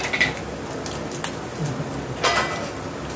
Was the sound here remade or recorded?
recorded